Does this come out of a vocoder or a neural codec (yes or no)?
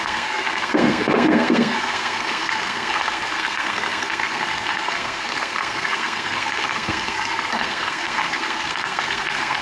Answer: yes